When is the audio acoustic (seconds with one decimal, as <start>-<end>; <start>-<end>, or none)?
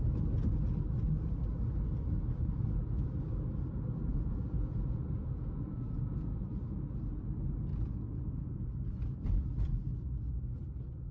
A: 0.0-4.1; 6.5-7.7; 8.7-11.1